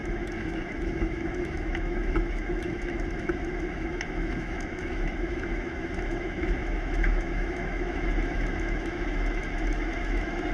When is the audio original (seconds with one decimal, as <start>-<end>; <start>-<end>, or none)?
none